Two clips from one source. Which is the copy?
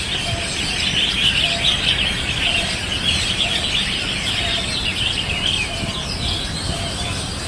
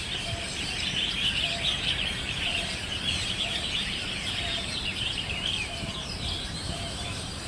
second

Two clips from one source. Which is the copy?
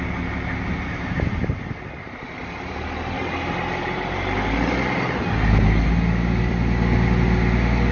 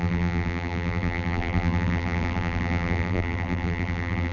second